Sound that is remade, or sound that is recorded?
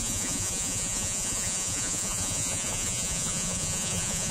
remade